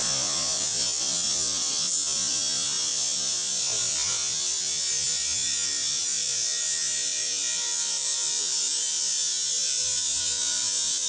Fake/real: real